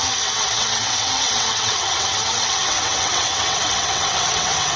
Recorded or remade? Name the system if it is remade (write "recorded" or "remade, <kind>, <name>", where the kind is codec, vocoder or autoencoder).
remade, vocoder, WaveNeXt